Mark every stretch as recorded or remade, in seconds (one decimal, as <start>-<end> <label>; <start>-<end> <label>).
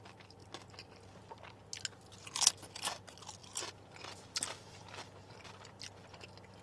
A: 0.0-6.6 recorded